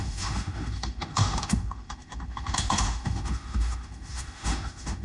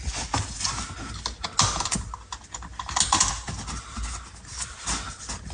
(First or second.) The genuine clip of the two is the second